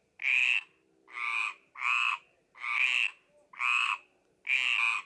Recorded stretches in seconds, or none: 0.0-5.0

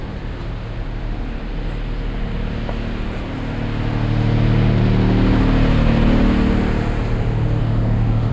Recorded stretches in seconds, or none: 0.0-7.6

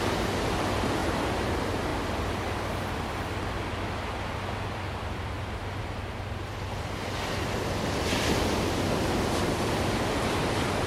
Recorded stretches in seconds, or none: 0.0-1.0; 1.5-10.9

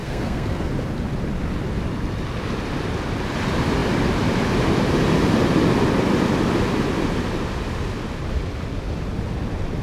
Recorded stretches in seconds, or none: 0.7-9.8

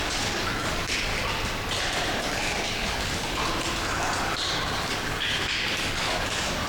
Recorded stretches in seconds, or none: 1.1-2.2; 3.4-4.2

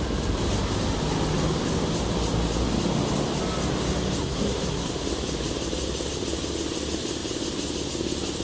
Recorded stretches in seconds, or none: 0.0-4.2; 4.9-8.4

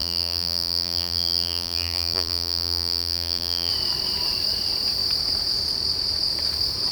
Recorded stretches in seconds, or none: 3.7-6.9